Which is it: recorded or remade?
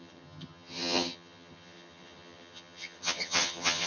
remade